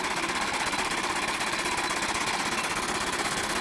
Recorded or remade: recorded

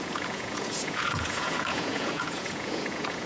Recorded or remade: remade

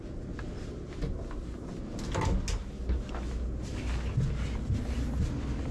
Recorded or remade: recorded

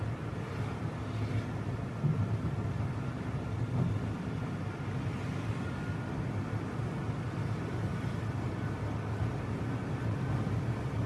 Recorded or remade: recorded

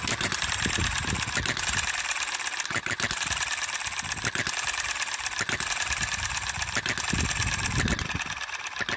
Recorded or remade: recorded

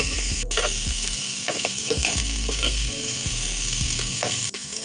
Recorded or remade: remade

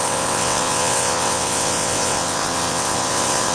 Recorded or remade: remade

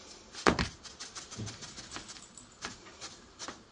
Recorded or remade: recorded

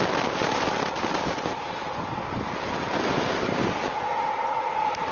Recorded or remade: recorded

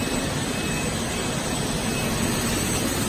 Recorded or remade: recorded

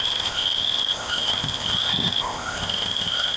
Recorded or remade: remade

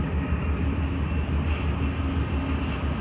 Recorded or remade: recorded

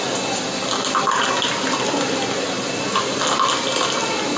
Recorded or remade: recorded